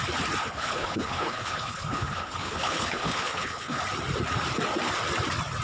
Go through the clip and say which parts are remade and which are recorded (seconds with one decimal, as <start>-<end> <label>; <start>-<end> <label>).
0.0-0.4 recorded; 0.4-3.8 remade; 3.8-5.6 recorded